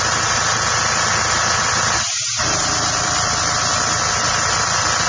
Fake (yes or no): no